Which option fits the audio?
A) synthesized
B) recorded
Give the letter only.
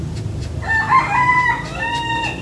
B